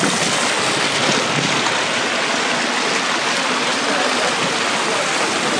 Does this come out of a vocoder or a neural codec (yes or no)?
no